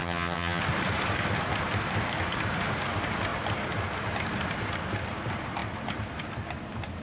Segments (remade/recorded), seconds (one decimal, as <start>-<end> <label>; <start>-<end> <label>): 0.0-0.6 remade; 0.6-7.0 recorded